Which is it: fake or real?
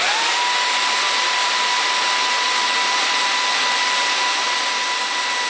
real